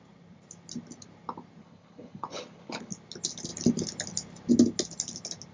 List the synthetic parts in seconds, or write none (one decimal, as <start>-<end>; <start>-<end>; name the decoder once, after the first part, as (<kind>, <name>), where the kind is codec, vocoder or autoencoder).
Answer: 1.6-2.9 (codec, HILCodec)

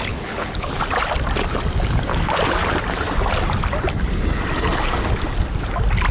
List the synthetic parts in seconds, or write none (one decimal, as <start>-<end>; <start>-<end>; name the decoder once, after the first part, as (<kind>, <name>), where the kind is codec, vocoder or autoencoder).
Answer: 0.0-0.7 (codec, HILCodec)

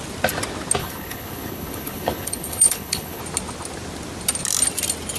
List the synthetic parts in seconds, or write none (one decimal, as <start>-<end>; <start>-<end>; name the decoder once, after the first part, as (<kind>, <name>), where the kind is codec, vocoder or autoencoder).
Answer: 0.8-3.2 (codec, HILCodec)

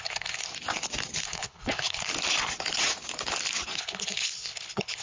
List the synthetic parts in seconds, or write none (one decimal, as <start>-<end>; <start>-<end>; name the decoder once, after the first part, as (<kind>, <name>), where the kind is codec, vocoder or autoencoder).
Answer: 0.0-0.5 (codec, HILCodec); 1.2-2.1; 3.8-5.0

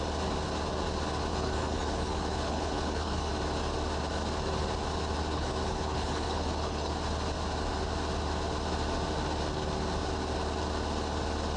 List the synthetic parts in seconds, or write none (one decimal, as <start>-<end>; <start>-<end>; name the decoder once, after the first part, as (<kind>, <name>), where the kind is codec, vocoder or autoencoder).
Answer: 1.3-3.3 (codec, HILCodec); 5.3-6.9

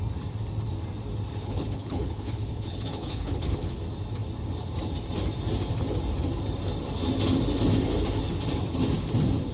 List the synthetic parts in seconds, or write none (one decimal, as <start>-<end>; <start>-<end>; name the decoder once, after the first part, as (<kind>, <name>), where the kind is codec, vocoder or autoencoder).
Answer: 1.4-3.8 (codec, HILCodec)